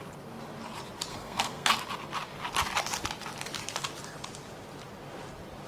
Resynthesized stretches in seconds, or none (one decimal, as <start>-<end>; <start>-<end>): 1.1-1.7